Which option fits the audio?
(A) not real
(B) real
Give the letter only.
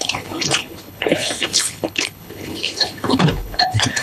A